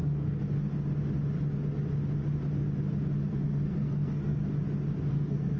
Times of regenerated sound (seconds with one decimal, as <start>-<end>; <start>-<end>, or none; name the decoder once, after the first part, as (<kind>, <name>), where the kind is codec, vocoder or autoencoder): 0.0-0.4 (codec, SNAC); 3.3-4.4; 5.1-5.6

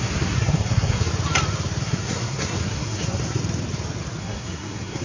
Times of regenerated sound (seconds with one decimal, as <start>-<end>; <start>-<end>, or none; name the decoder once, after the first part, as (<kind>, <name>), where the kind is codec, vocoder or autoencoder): 0.0-1.1 (codec, SNAC); 1.8-3.4; 4.2-5.0

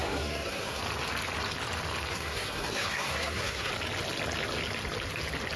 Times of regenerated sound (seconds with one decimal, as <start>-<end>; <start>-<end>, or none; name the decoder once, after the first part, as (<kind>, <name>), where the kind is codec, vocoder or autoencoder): 0.0-0.8 (codec, SNAC); 2.1-3.7

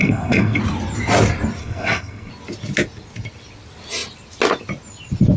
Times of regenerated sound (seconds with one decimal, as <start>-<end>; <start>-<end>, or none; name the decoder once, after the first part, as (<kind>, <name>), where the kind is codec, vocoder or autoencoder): 0.0-0.6 (codec, SNAC); 1.6-2.3

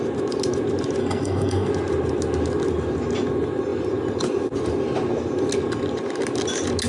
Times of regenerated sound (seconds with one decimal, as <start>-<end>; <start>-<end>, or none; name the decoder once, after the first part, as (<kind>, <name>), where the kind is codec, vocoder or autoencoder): 1.0-1.7 (codec, SNAC)

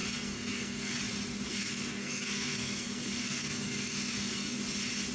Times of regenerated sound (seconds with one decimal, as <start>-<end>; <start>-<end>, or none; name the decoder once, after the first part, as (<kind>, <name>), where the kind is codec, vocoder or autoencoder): 0.0-1.0 (codec, SNAC); 1.5-4.6